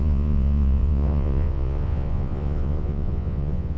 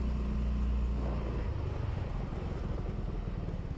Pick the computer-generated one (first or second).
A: first